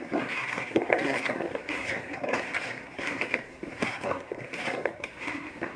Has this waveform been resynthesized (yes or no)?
yes